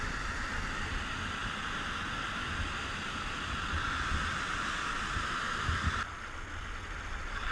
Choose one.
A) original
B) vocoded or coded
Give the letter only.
A